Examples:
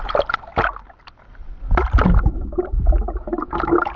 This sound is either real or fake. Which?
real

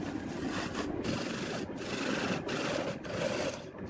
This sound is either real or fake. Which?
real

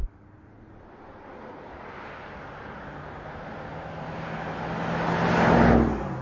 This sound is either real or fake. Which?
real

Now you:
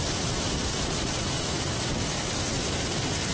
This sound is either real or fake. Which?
real